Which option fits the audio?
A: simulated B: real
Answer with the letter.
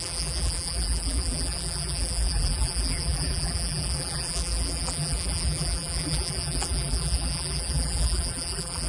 A